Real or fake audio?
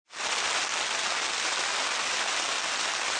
real